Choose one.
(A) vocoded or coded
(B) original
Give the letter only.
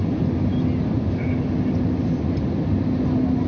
B